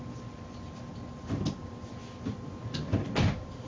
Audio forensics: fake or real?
real